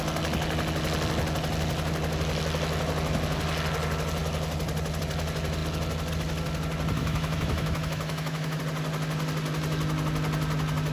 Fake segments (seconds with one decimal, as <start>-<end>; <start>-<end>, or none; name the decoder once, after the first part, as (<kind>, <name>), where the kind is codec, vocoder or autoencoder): 7.0-8.6 (autoencoder, DAC-VAE)